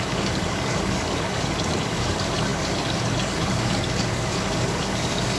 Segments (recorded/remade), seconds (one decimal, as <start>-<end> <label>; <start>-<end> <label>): 0.0-5.4 remade